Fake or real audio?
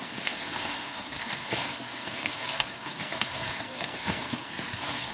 fake